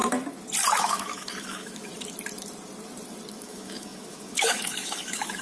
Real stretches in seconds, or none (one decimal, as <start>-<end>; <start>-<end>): 0.0-0.8; 1.9-3.3